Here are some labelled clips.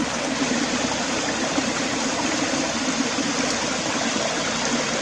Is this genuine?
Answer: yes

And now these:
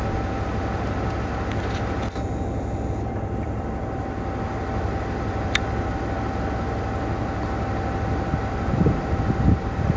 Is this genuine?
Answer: yes